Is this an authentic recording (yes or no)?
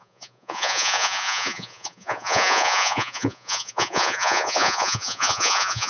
no